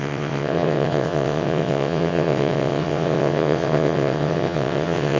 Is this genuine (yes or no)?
no